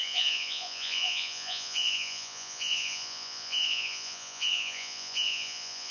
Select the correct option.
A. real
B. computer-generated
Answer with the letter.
B